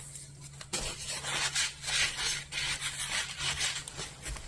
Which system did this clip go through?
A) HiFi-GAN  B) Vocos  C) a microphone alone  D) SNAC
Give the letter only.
C